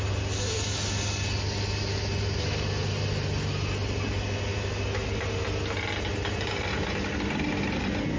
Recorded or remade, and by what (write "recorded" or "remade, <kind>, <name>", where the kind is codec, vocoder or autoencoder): recorded